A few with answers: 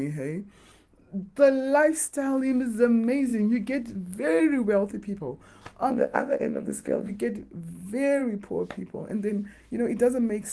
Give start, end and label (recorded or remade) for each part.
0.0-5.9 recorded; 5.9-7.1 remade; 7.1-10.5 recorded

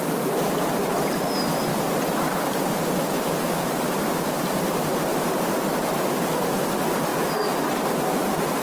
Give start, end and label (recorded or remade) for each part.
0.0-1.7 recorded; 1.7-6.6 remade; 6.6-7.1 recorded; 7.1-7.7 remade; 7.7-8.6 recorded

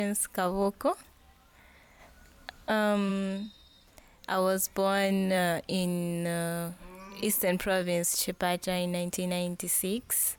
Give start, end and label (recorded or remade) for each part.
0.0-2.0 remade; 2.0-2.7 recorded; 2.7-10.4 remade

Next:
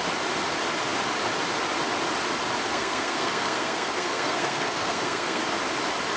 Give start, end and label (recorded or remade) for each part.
0.0-2.7 recorded; 2.7-5.4 remade; 5.4-6.2 recorded

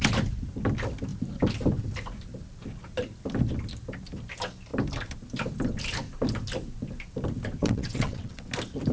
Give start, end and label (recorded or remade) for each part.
0.0-7.6 recorded; 7.6-8.5 remade; 8.5-8.9 recorded

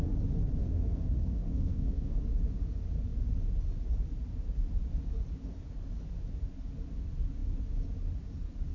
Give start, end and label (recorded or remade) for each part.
0.0-0.6 recorded; 0.6-2.2 remade; 2.2-8.7 recorded

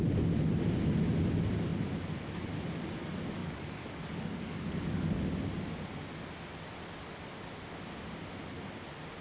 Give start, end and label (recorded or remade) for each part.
0.0-3.4 recorded; 3.4-5.2 remade; 5.2-9.2 recorded

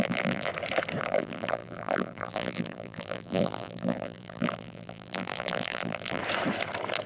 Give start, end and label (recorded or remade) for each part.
0.0-0.5 remade; 0.5-1.0 recorded; 1.0-6.2 remade; 6.2-7.1 recorded